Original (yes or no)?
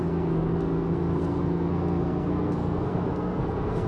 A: no